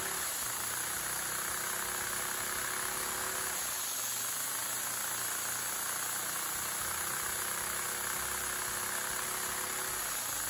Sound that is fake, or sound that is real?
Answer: real